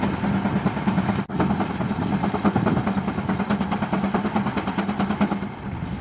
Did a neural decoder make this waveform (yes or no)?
no